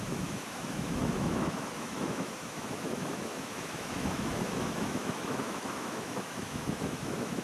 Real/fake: fake